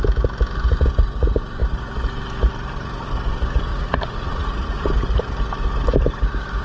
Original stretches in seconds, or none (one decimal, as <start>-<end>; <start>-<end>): 0.0-3.7; 4.9-6.6